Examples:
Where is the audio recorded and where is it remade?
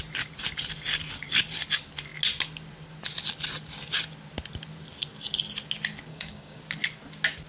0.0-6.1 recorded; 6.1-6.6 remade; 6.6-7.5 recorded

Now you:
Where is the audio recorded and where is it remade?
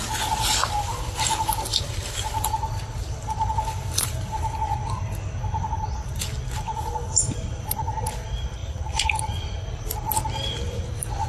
0.0-11.3 recorded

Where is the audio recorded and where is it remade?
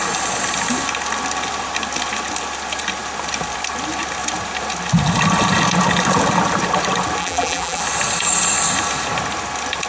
0.0-7.2 recorded; 7.2-7.8 remade; 7.8-9.9 recorded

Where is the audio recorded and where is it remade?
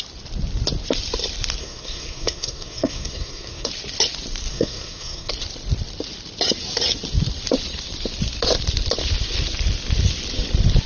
0.0-1.6 recorded; 1.6-3.7 remade; 3.7-4.5 recorded; 4.5-5.3 remade; 5.3-10.9 recorded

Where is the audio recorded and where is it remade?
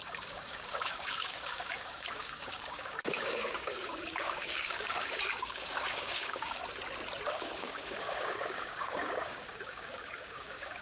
0.0-6.6 remade; 6.6-7.3 recorded; 7.3-10.8 remade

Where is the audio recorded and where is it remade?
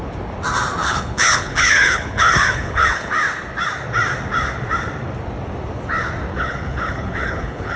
0.0-0.8 recorded; 0.8-3.1 remade; 3.1-6.3 recorded; 6.3-7.8 remade